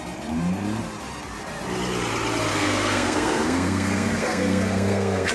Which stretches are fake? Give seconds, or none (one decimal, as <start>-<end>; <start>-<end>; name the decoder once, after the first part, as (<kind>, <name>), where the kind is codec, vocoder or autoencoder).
2.5-5.3 (codec, SNAC)